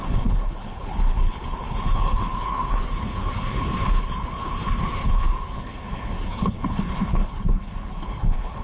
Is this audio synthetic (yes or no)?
yes